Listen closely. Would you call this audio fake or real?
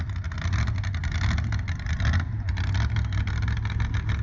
real